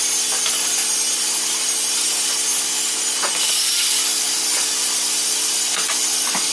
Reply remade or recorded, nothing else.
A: recorded